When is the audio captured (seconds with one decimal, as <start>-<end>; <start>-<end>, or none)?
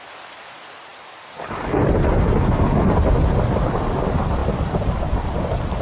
0.0-5.8